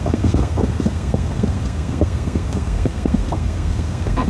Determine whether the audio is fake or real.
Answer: fake